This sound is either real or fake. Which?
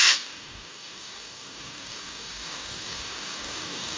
fake